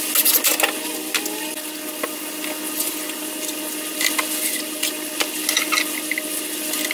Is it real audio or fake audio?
real